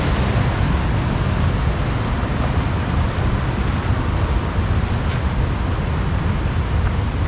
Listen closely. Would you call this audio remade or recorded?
recorded